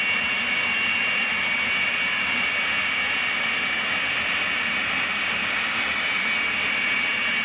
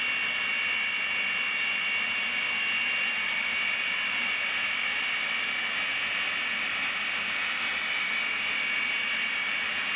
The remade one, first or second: first